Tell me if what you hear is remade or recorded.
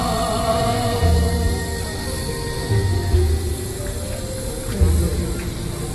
recorded